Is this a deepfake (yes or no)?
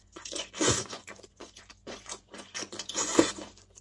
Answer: yes